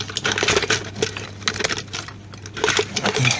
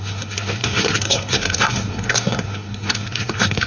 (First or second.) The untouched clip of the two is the first